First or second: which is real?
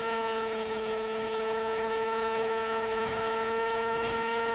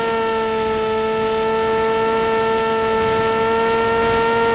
second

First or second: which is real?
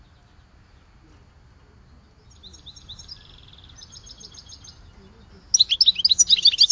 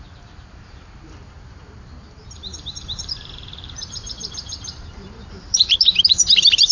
first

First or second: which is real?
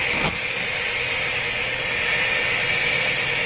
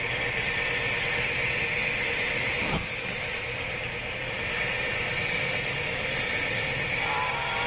first